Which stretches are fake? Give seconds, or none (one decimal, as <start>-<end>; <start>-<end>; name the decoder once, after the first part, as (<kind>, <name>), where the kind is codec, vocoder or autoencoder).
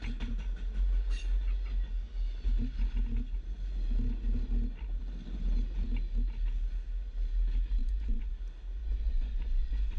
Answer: 7.8-8.3 (vocoder, Vocos); 8.8-10.0